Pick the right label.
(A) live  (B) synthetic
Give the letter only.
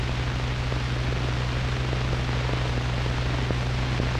A